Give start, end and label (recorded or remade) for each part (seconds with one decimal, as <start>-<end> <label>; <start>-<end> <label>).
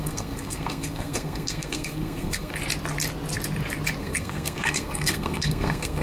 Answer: 0.0-2.5 remade; 2.5-4.0 recorded; 4.0-6.0 remade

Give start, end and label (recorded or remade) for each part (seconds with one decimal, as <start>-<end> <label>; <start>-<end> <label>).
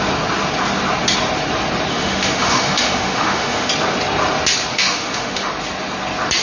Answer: 0.0-1.9 recorded; 1.9-3.7 remade; 3.7-4.7 recorded; 4.7-5.5 remade; 5.5-6.4 recorded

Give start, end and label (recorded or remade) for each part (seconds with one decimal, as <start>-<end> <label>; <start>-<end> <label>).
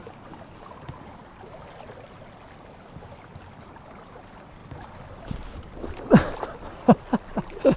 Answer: 0.0-7.8 recorded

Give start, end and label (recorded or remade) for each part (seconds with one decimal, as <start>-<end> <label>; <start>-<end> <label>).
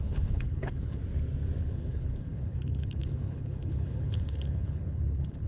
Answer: 0.0-1.0 remade; 1.0-1.6 recorded; 1.6-5.5 remade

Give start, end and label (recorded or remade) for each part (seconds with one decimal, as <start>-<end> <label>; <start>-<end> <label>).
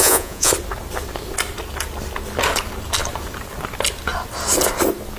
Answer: 0.0-0.5 remade; 0.5-5.2 recorded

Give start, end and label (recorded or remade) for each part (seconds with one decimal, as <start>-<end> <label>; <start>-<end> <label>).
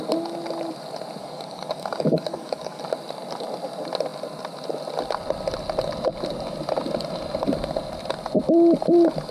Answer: 0.0-1.2 recorded; 1.2-2.8 remade; 2.8-9.3 recorded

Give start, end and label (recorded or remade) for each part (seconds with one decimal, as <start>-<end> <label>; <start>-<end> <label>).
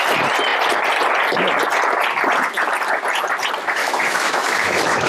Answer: 0.0-3.8 recorded; 3.8-5.1 remade